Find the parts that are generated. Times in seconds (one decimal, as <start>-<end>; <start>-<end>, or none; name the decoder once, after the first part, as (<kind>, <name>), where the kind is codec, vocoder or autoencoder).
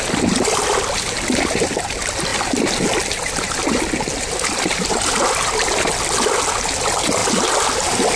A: none